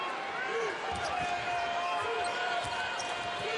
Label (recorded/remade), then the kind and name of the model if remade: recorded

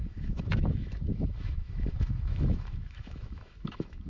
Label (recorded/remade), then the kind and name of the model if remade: remade, autoencoder, DAC-VAE